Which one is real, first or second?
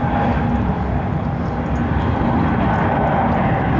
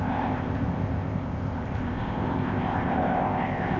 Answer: first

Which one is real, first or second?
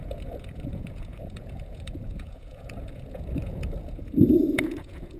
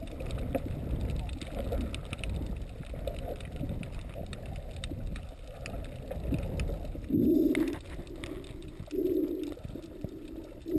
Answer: second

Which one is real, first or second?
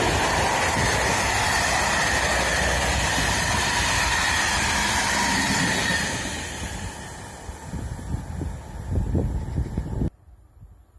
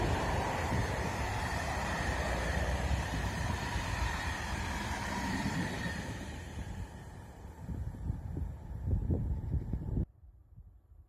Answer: first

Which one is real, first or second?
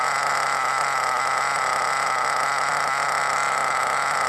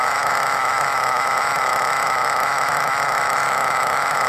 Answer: first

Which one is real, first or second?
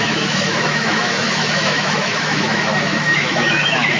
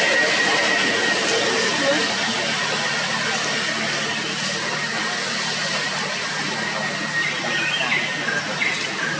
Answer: second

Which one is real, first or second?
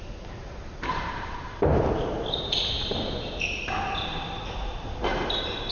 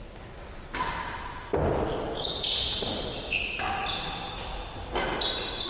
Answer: second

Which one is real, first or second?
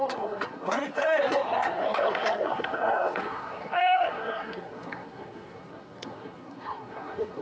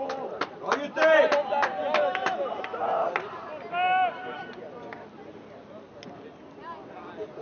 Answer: second